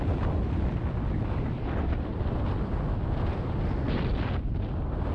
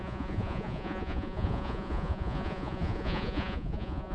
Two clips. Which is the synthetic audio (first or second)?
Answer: second